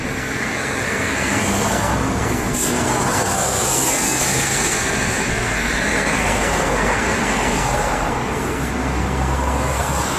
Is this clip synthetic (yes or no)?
yes